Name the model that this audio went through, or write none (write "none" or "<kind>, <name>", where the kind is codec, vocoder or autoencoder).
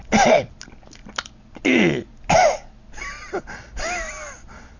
none